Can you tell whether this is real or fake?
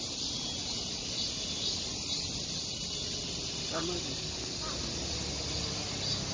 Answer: real